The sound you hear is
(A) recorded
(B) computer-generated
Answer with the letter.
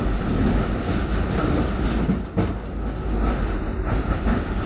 A